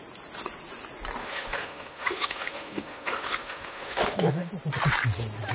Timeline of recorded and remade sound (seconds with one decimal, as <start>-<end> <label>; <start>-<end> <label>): 0.0-1.2 recorded; 1.2-4.5 remade; 4.5-5.5 recorded